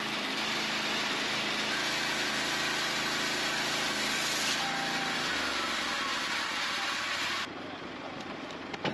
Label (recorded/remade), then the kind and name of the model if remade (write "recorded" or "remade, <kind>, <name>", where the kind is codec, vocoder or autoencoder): recorded